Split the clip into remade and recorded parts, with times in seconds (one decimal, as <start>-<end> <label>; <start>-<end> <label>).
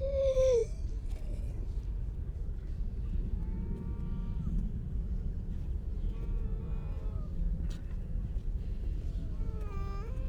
0.0-10.3 recorded